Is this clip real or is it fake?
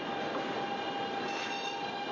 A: real